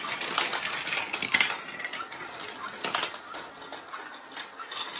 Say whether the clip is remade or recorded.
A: recorded